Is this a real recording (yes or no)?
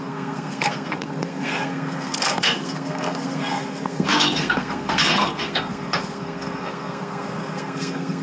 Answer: no